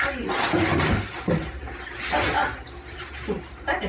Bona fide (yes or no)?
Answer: yes